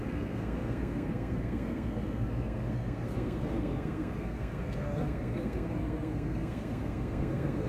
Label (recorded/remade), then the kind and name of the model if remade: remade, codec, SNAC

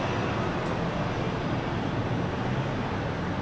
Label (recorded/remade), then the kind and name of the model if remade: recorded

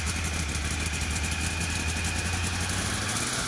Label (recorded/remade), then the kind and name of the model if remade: recorded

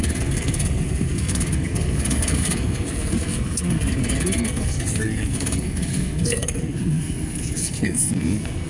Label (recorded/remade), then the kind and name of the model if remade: remade, codec, SNAC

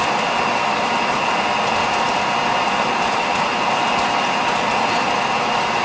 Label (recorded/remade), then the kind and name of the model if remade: recorded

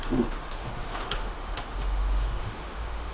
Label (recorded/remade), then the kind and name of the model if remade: remade, autoencoder, DAC-VAE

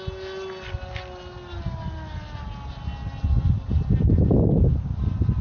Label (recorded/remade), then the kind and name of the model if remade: recorded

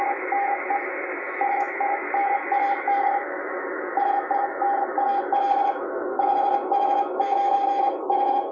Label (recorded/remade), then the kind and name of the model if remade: remade, autoencoder, DAC-VAE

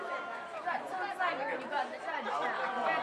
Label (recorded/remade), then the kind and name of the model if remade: recorded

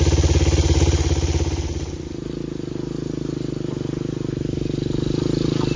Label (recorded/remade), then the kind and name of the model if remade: recorded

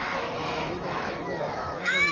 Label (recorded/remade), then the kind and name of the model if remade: remade, autoencoder, DAC-VAE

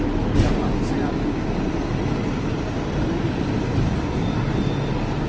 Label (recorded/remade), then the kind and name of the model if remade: recorded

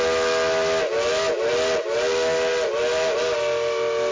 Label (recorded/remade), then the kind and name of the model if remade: recorded